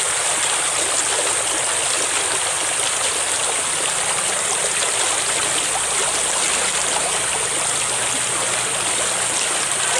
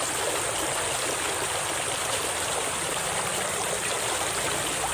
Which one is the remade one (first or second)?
second